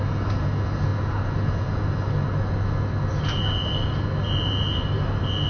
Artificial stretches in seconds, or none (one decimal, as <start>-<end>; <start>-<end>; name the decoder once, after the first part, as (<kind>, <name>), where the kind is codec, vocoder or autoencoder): none